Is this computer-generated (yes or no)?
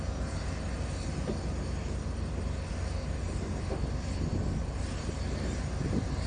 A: no